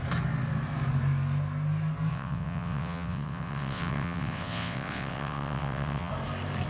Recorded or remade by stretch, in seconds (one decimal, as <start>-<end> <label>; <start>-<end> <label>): 0.0-2.1 recorded; 2.1-6.1 remade; 6.1-6.7 recorded